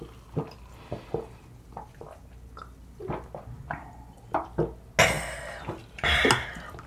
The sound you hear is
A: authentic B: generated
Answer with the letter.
A